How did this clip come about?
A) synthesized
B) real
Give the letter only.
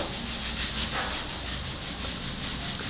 B